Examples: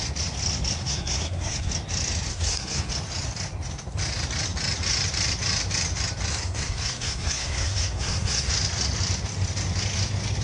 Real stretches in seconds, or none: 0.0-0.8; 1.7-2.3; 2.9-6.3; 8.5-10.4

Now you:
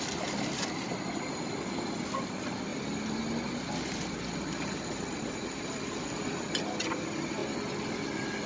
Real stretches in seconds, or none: 0.0-8.5

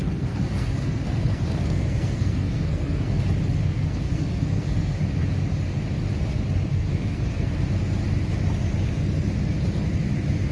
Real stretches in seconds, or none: 3.2-3.6; 5.0-6.7; 7.5-10.5

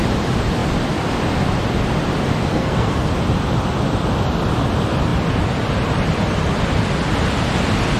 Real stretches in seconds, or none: 0.0-2.5; 3.1-8.0

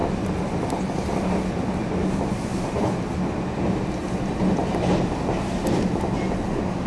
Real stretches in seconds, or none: 0.0-6.9

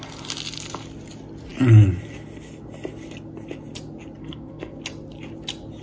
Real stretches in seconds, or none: 0.0-4.2; 4.8-5.8

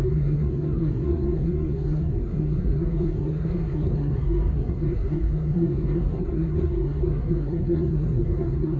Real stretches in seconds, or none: none

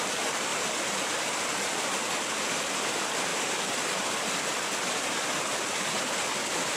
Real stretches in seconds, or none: 0.0-6.8